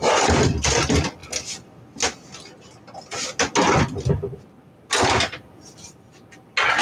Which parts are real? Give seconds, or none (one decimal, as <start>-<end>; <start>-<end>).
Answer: 0.0-6.8